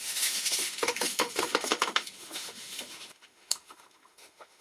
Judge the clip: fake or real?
fake